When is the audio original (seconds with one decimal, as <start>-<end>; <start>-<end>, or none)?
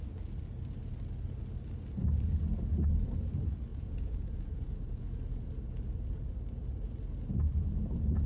0.0-3.7; 5.2-8.3